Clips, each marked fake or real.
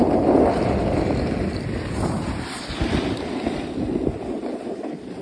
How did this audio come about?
real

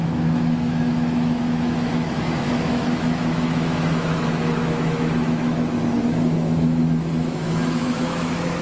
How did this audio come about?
fake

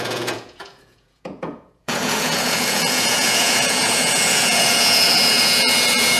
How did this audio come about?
fake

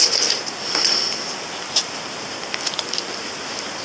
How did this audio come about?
real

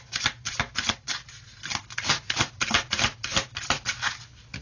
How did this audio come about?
real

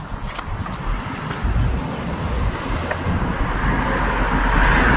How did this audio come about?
real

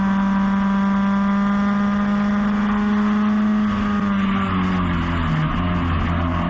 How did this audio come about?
real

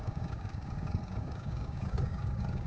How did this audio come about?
fake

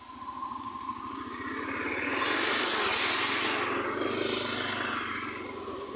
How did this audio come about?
real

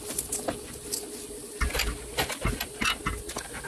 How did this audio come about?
real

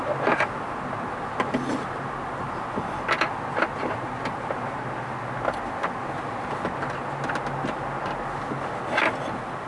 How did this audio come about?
real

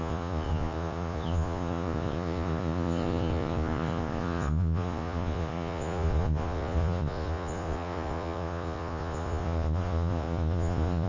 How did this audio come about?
fake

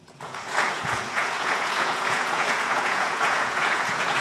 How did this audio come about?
fake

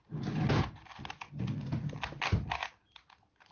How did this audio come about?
real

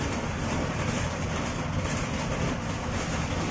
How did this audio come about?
real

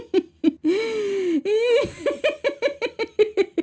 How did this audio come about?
real